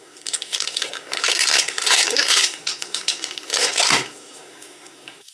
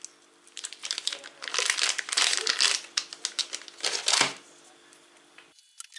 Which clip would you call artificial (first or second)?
first